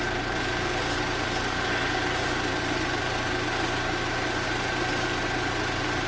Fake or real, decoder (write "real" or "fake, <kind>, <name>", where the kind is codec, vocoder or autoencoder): real